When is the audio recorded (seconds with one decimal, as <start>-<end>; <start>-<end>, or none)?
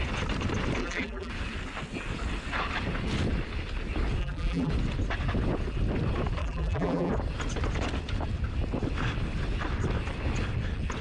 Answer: 0.0-0.8; 1.3-4.2; 4.7-6.4; 7.1-11.0